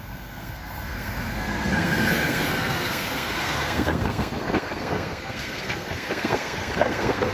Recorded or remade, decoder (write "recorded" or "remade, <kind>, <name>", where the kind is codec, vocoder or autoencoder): remade, codec, SNAC